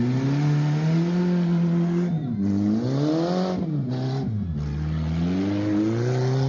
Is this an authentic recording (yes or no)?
yes